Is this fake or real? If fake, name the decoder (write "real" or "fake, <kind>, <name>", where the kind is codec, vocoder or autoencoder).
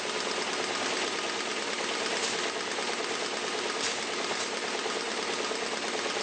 real